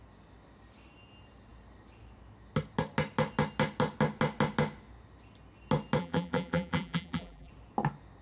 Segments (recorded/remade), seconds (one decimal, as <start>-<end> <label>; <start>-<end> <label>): 0.0-6.0 recorded; 6.0-7.5 remade; 7.5-8.2 recorded